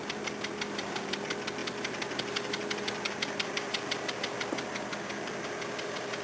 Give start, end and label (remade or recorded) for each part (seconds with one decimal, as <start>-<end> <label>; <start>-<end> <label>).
0.0-6.2 recorded